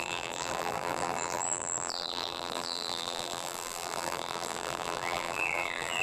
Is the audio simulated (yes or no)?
yes